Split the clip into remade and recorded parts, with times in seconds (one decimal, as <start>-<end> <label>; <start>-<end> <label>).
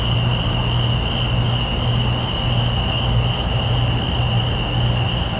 0.0-5.4 recorded